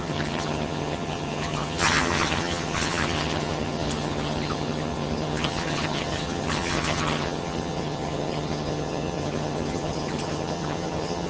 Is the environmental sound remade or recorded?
remade